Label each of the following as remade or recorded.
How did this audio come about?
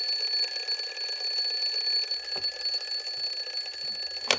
recorded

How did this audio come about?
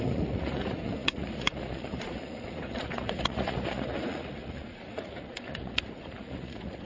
remade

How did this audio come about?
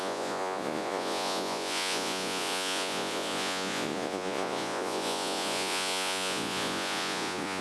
remade